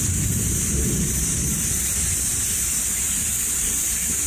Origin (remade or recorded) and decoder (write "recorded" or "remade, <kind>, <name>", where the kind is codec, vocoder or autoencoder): remade, vocoder, BigVGAN v2